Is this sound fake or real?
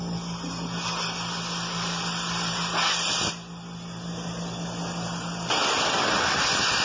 real